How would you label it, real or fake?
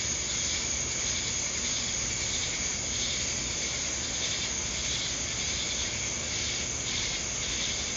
real